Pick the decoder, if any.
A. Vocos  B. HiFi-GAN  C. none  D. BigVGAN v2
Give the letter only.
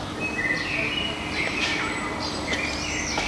C